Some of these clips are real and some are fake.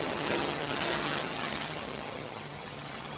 fake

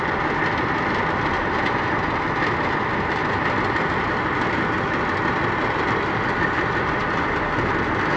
real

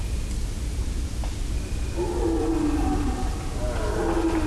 real